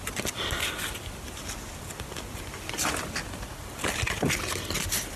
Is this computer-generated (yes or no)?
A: no